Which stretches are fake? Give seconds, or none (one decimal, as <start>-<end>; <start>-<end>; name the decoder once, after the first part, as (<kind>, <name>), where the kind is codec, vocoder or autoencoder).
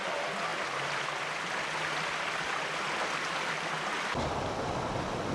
none